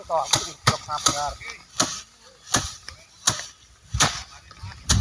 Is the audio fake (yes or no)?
no